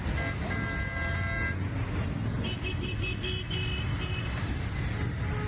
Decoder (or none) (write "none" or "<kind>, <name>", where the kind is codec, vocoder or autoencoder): none